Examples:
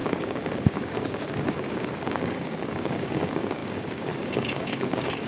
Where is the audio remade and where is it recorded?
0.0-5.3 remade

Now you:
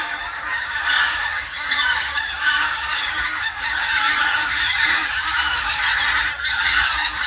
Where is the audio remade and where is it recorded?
0.0-5.8 remade; 5.8-6.5 recorded; 6.5-7.3 remade